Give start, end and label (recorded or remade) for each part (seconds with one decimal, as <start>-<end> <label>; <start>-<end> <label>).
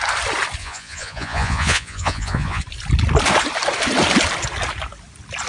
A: 0.0-0.6 recorded; 0.6-2.6 remade; 2.6-5.5 recorded